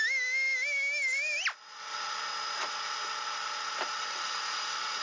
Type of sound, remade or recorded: recorded